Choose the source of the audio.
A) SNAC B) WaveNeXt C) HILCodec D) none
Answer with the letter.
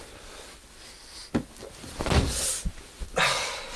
D